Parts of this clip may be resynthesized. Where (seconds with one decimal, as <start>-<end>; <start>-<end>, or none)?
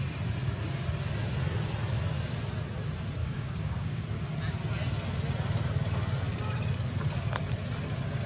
3.2-4.0